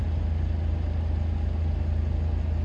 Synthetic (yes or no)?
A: no